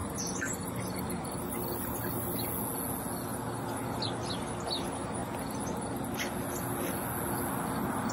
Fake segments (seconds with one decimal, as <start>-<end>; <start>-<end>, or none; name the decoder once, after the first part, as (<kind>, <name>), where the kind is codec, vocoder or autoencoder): 0.0-0.5 (vocoder, BigVGAN v2)